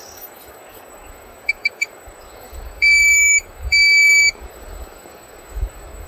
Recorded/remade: remade